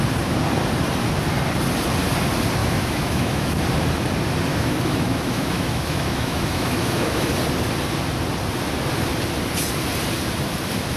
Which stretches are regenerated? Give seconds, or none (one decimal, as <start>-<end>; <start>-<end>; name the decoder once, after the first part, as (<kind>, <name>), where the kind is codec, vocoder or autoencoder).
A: 2.6-3.5 (autoencoder, DAC-VAE); 4.5-7.3